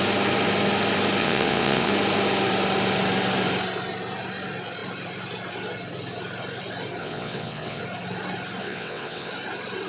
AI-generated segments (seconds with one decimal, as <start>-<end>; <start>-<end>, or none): 1.2-1.9; 7.0-7.8; 8.6-9.3